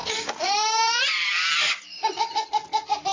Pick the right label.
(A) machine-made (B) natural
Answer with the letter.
B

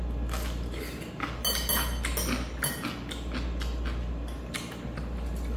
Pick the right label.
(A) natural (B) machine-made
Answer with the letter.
A